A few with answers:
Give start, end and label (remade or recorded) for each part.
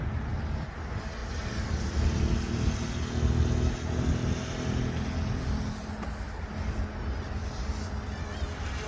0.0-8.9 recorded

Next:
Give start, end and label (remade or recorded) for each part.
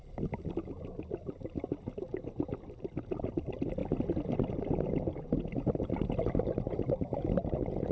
0.0-7.9 recorded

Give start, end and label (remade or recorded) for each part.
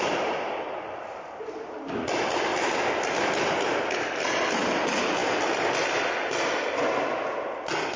0.0-8.0 recorded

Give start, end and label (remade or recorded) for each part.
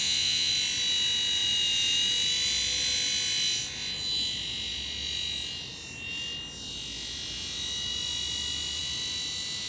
0.0-0.5 remade; 0.5-9.7 recorded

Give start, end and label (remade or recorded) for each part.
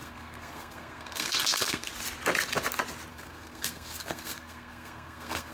0.0-1.9 remade; 1.9-3.1 recorded; 3.1-5.5 remade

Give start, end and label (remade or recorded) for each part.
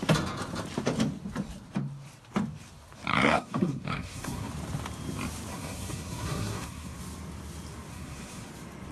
0.0-3.1 recorded; 3.1-4.5 remade; 4.5-5.5 recorded; 5.5-7.0 remade; 7.0-7.9 recorded; 7.9-8.5 remade; 8.5-8.9 recorded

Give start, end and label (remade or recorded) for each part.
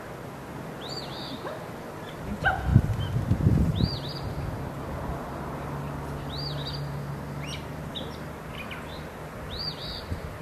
0.0-10.4 recorded